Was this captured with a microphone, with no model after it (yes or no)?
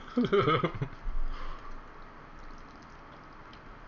yes